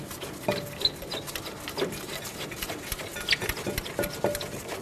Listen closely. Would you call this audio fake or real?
real